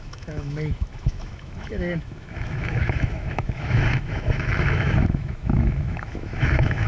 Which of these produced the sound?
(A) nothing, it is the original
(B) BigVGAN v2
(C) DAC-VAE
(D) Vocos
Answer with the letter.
C